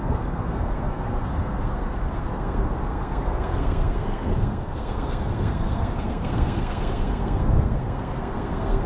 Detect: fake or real fake